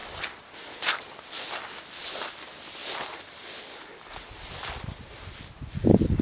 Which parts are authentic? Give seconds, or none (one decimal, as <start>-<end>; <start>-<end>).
0.0-6.2

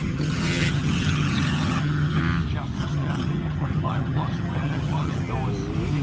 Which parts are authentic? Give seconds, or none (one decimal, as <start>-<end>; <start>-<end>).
2.2-2.8; 5.3-6.0

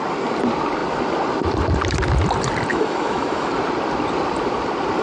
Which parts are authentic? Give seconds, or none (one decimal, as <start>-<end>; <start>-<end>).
0.0-2.7; 3.5-5.0

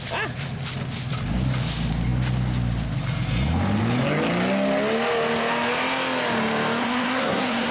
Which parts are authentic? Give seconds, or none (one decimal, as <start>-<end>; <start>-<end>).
0.0-6.8

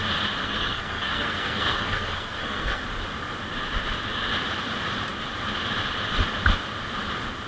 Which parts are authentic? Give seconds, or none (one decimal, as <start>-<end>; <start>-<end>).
0.0-0.4; 2.8-7.5

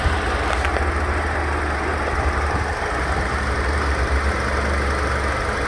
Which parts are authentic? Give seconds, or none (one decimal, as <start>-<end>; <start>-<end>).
0.0-1.9; 4.3-5.7

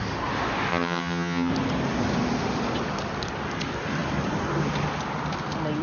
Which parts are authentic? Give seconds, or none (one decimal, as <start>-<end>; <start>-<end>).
0.0-0.7; 1.5-5.8

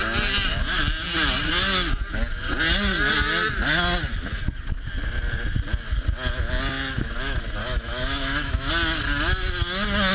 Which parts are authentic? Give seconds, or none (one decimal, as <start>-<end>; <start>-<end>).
0.0-7.6; 8.7-10.1